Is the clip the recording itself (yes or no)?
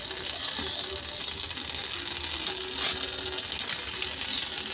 yes